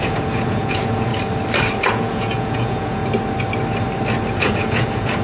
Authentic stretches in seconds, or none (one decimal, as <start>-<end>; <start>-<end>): 1.1-1.9; 3.0-4.3